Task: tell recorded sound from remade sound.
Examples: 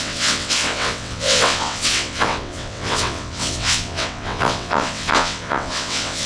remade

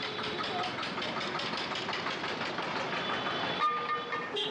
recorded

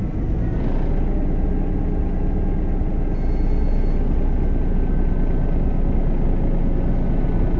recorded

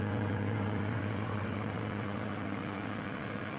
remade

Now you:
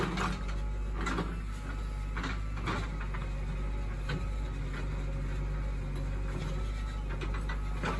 recorded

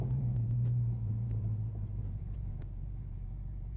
remade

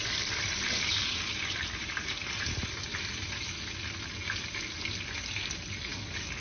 recorded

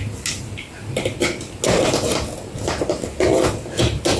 recorded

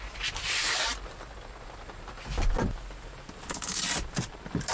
recorded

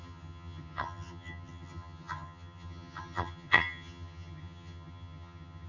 remade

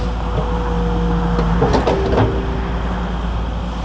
recorded